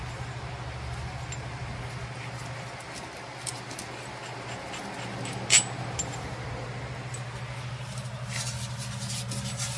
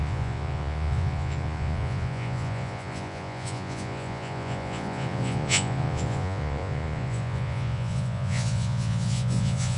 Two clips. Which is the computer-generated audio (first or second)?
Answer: second